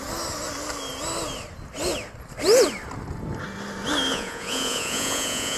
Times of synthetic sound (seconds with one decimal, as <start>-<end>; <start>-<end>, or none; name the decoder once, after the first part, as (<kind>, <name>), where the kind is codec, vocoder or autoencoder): 4.1-5.6 (vocoder, Vocos)